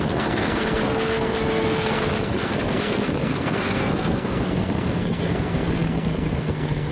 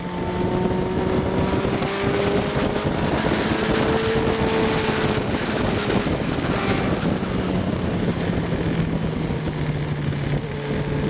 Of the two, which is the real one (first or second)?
second